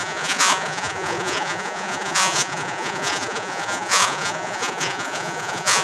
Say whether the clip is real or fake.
fake